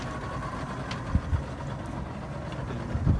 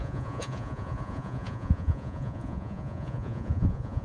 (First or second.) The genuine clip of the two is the first